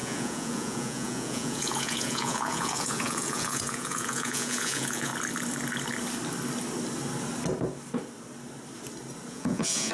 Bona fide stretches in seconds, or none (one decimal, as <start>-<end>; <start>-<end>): 5.1-9.3